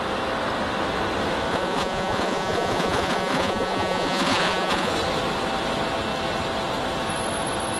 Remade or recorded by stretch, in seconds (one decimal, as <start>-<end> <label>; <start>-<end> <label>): 0.0-1.5 recorded; 1.5-4.9 remade; 4.9-7.8 recorded